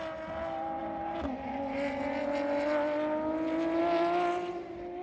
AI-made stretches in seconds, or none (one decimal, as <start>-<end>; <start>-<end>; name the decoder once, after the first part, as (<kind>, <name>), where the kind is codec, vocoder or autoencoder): none